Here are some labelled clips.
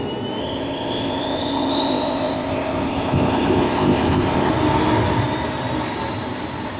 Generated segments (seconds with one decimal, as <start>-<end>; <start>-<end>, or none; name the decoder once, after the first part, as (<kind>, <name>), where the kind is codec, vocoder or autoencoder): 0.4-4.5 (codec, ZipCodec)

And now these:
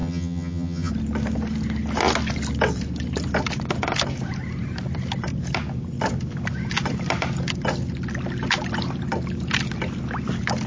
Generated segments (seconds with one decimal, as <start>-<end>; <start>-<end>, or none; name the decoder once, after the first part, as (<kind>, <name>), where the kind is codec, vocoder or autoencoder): 0.0-0.9 (vocoder, HiFi-GAN)

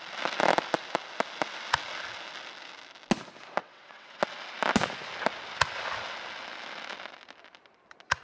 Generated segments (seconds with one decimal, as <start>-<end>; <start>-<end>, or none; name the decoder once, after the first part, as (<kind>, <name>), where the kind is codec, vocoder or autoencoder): 3.6-4.2 (vocoder, WaveNeXt)

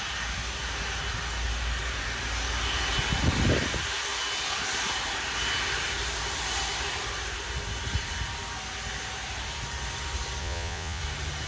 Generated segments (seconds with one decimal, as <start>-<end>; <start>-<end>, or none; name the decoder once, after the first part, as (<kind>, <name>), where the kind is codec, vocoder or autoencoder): 10.4-11.0 (vocoder, Vocos)

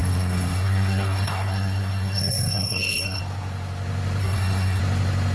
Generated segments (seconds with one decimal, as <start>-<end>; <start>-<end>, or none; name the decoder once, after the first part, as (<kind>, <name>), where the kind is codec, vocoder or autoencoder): 0.0-3.2 (codec, SNAC); 4.2-4.8

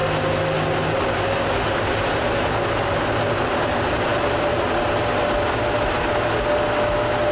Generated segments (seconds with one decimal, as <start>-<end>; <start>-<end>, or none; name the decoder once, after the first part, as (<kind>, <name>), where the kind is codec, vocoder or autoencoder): none